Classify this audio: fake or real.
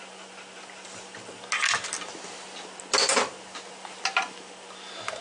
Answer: real